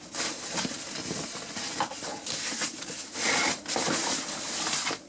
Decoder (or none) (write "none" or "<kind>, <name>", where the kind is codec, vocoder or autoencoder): none